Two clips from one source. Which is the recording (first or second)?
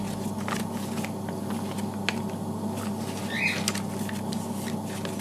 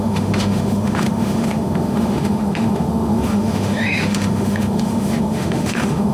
first